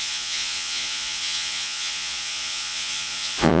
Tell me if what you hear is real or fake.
fake